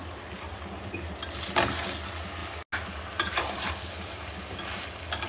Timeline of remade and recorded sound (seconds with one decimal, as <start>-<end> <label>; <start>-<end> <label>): 0.0-5.3 recorded